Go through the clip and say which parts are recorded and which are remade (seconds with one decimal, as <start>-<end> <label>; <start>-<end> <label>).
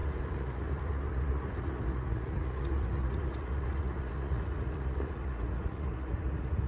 0.0-6.7 remade